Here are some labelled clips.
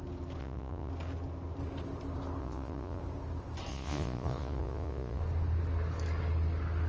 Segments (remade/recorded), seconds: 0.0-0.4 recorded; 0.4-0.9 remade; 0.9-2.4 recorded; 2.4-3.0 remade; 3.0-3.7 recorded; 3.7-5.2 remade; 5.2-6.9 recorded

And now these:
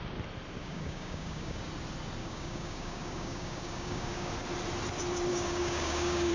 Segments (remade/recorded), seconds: 0.0-0.6 recorded; 0.6-1.7 remade; 1.7-2.2 recorded; 2.2-4.3 remade; 4.3-5.3 recorded; 5.3-6.3 remade

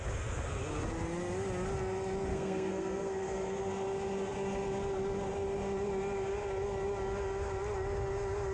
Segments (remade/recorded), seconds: 0.0-2.3 recorded; 2.3-3.7 remade; 3.7-8.5 recorded

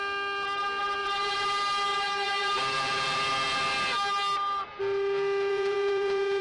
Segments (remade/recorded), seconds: 0.0-1.0 recorded; 1.0-1.5 remade; 1.5-1.9 recorded; 1.9-3.2 remade; 3.2-5.5 recorded; 5.5-6.4 remade

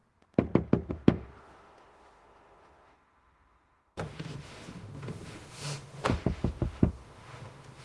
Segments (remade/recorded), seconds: 0.0-0.9 recorded; 0.9-7.8 remade

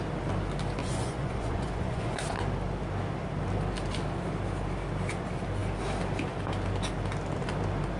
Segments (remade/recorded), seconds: 0.0-0.8 recorded; 0.8-2.2 remade; 2.2-8.0 recorded